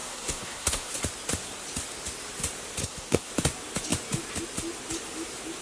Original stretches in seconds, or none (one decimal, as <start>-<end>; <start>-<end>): 0.9-2.8; 3.3-5.6